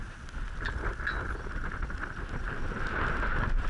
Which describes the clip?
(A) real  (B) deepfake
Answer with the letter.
A